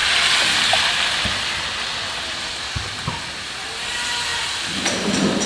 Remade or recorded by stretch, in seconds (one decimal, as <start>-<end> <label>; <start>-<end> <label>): 0.0-5.5 recorded